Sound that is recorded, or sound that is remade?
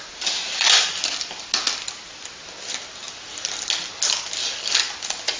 recorded